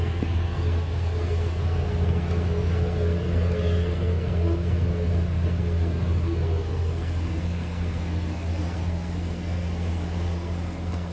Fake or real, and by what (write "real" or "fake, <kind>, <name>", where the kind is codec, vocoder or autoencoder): fake, codec, SNAC